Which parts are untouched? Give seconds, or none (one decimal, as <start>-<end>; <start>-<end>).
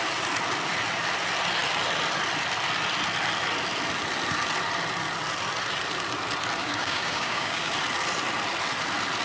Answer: 0.0-6.6; 7.7-9.2